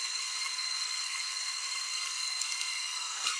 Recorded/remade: remade